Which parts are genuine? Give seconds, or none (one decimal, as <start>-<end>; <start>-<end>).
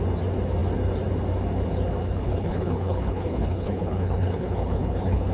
0.0-2.0